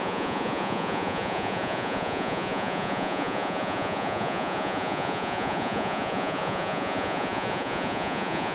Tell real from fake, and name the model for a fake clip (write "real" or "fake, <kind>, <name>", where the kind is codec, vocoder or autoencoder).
fake, vocoder, Vocos